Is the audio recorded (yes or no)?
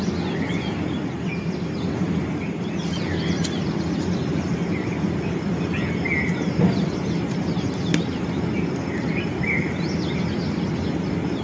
yes